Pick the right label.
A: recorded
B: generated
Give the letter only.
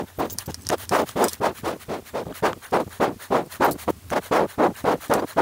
A